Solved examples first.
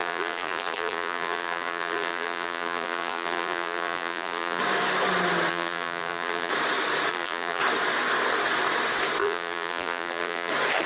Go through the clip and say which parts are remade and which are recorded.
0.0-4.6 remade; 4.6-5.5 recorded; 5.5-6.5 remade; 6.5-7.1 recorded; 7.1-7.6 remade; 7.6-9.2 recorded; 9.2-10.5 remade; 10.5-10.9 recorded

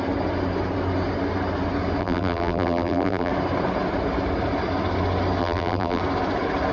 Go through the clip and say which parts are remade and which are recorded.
0.0-2.0 recorded; 2.0-3.3 remade; 3.3-5.4 recorded; 5.4-6.0 remade; 6.0-6.7 recorded

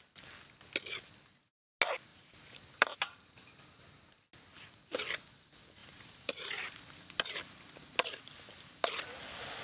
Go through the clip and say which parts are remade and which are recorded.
0.0-2.1 recorded; 2.1-3.6 remade; 3.6-5.8 recorded; 5.8-7.0 remade; 7.0-9.6 recorded

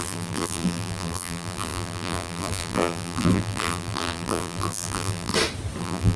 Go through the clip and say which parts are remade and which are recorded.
0.0-5.3 remade; 5.3-5.8 recorded; 5.8-6.2 remade

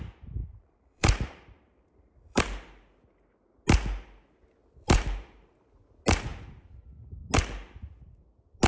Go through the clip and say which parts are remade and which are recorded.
0.0-0.4 recorded; 0.4-2.4 remade; 2.4-4.6 recorded; 4.6-5.7 remade; 5.7-8.7 recorded

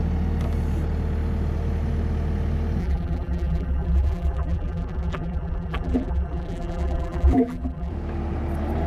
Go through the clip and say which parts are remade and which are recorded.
0.0-2.8 recorded; 2.8-7.9 remade; 7.9-8.9 recorded

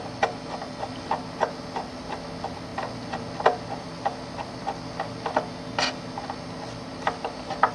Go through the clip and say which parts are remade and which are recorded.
0.0-6.9 recorded; 6.9-7.7 remade

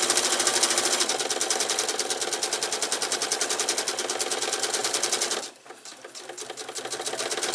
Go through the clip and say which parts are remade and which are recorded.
0.0-0.5 recorded; 0.5-1.5 remade; 1.5-4.8 recorded; 4.8-5.7 remade; 5.7-7.5 recorded